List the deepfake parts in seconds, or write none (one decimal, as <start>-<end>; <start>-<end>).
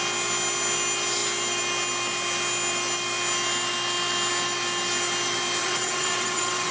5.6-6.7